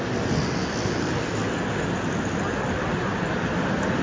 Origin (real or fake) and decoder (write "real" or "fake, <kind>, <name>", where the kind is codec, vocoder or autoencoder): real